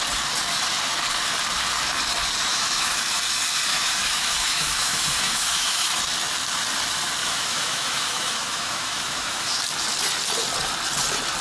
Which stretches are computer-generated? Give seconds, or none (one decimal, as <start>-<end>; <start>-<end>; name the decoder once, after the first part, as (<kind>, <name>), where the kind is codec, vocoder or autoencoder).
2.5-3.0 (autoencoder, DAC-VAE); 3.7-6.0; 7.2-9.6

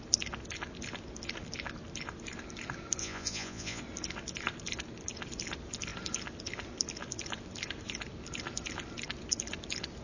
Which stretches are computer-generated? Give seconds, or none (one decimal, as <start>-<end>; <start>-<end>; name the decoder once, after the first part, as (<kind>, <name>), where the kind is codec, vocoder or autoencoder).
3.0-3.8 (vocoder, Vocos)